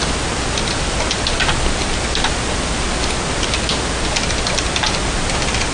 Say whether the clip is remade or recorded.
recorded